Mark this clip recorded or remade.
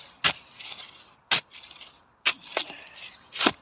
recorded